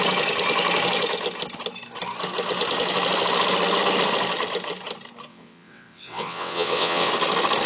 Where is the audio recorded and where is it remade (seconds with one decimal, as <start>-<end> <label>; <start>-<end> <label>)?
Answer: 0.0-5.3 recorded; 5.3-7.1 remade; 7.1-7.7 recorded